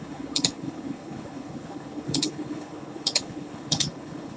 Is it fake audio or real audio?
fake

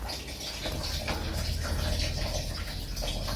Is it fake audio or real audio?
real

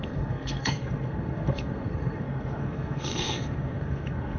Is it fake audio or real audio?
fake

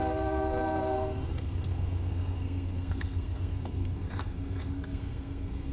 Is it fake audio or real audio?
fake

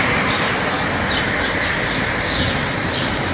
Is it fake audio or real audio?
real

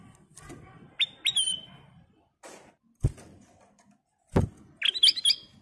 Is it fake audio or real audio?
real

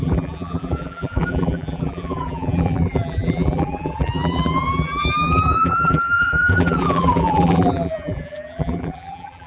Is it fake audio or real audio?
fake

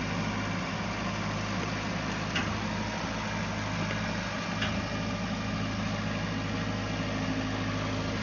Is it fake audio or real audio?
real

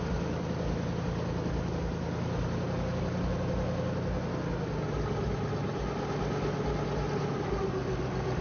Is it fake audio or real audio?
real